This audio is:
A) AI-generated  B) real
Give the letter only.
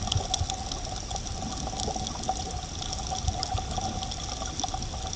B